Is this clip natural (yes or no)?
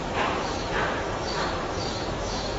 no